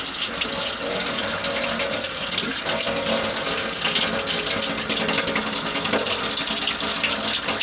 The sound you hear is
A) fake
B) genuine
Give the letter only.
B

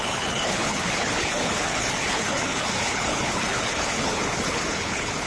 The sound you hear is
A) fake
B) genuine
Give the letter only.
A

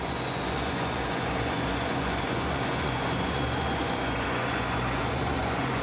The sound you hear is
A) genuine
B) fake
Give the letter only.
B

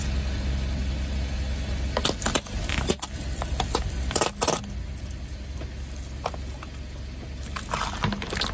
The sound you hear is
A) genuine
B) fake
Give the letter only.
A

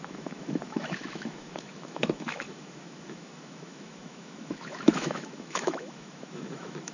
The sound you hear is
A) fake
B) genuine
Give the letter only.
A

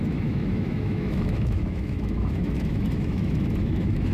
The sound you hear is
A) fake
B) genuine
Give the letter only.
A